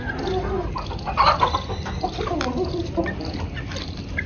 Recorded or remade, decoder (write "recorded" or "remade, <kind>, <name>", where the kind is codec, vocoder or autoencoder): recorded